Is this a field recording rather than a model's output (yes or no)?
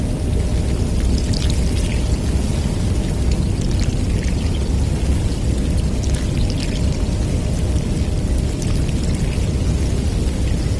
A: yes